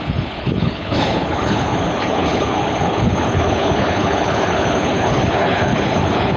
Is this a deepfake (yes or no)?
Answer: yes